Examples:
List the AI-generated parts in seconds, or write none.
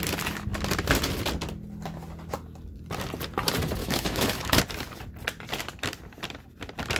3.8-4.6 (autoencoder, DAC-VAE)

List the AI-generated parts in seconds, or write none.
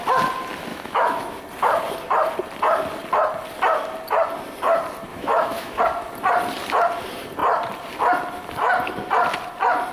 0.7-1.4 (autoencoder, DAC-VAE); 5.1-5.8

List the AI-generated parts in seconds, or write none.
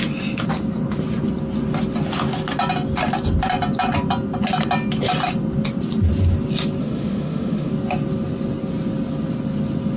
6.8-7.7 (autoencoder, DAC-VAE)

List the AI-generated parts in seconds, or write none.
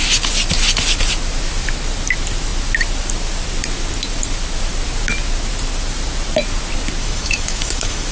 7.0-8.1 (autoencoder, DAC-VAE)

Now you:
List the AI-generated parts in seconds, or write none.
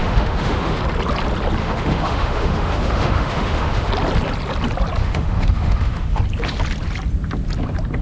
0.0-0.8 (autoencoder, DAC-VAE); 1.6-3.9; 5.0-6.2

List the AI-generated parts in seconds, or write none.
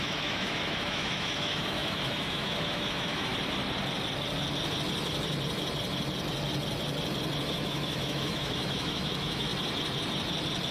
0.0-3.3 (autoencoder, DAC-VAE); 7.4-9.5